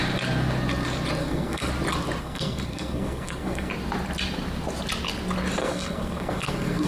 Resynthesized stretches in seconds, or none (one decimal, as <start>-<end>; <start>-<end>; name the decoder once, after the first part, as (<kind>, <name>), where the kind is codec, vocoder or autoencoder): 1.2-1.7 (codec, SNAC); 2.2-3.7; 5.6-6.9